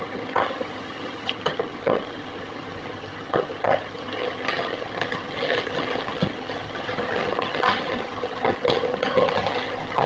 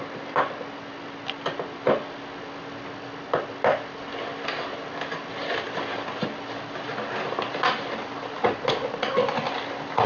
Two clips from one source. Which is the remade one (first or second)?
first